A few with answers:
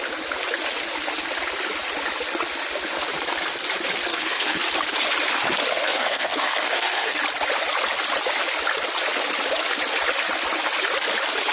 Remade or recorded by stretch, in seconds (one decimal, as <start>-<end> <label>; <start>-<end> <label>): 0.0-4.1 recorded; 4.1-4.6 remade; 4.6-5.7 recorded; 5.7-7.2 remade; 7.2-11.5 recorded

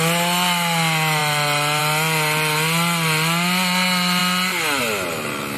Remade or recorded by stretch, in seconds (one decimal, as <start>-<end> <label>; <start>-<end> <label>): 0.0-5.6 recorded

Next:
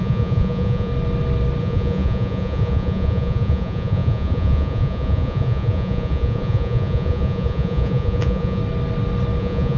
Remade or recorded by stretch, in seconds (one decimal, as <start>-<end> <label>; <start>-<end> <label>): 0.0-0.9 remade; 0.9-1.6 recorded; 1.6-8.6 remade; 8.6-9.4 recorded; 9.4-9.8 remade